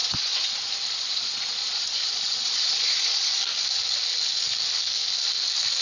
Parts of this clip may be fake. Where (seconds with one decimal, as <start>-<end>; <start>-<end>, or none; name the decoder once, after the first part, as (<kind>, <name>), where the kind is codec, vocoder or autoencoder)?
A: 0.0-3.4 (vocoder, Vocos)